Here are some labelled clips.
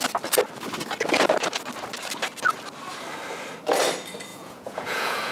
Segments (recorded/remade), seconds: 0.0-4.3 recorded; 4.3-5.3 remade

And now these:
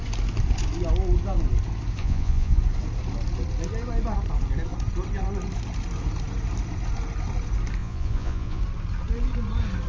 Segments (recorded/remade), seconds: 0.0-2.0 recorded; 2.0-2.6 remade; 2.6-7.8 recorded; 7.8-8.6 remade; 8.6-9.9 recorded

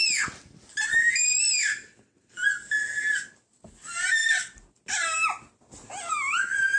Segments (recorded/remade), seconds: 0.0-6.8 recorded